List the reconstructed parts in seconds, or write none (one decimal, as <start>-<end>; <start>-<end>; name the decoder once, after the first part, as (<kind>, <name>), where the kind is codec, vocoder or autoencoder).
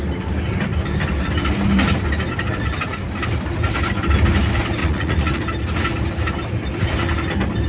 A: 4.8-5.4 (vocoder, Vocos)